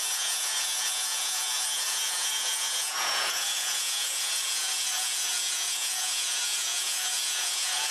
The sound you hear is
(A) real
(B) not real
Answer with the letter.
B